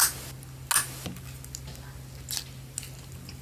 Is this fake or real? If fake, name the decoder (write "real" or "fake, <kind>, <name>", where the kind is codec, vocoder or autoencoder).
real